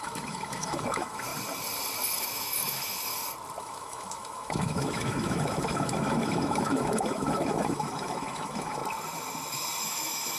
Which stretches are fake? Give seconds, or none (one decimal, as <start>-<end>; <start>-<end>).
0.0-1.3; 2.2-3.1; 3.6-8.8; 9.8-10.4